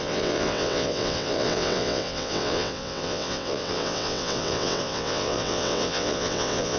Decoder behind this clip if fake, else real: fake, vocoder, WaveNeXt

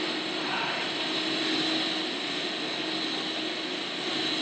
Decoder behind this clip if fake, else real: real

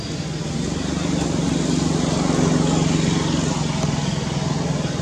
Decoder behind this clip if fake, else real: real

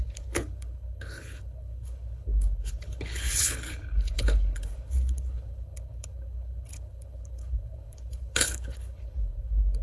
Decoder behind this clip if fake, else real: fake, codec, HILCodec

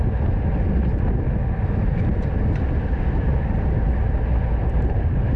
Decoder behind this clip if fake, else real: real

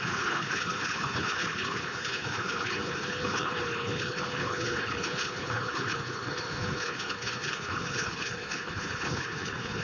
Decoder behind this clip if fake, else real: fake, codec, HILCodec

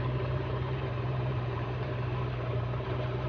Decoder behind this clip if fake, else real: fake, vocoder, BigVGAN v2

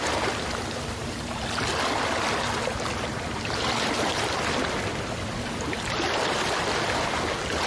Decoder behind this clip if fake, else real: real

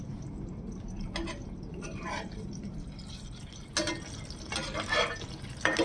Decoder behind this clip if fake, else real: real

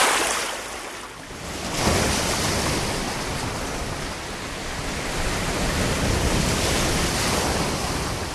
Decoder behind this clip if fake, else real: real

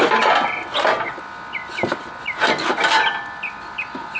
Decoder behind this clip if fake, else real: real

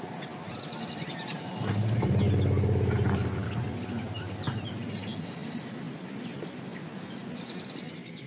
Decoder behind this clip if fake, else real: real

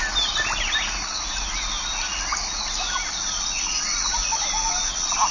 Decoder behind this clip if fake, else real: real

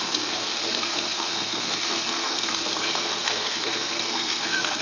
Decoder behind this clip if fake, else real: fake, codec, SNAC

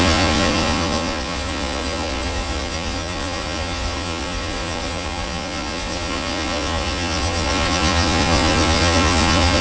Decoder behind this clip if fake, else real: fake, vocoder, Vocos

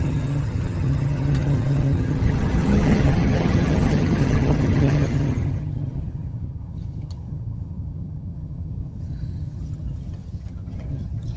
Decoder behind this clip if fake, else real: fake, vocoder, HiFi-GAN